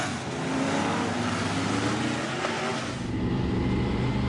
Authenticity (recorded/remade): recorded